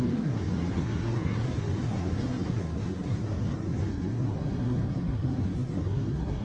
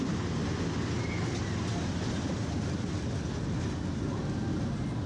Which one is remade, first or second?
first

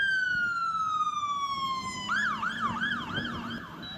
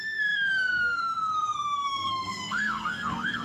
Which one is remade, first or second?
second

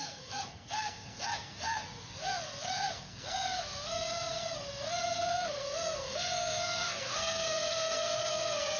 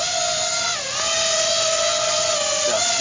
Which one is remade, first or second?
first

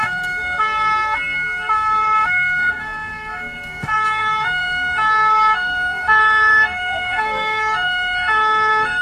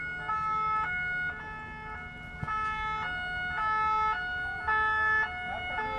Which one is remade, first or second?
first